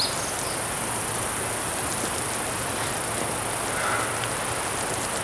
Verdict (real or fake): real